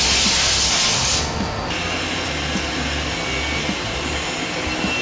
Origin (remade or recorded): recorded